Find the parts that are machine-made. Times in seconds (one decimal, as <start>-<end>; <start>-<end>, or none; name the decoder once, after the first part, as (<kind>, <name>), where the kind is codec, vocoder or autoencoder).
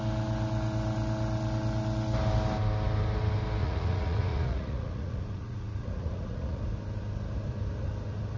3.6-6.6 (vocoder, Vocos)